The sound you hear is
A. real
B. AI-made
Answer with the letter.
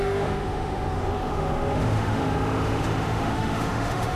B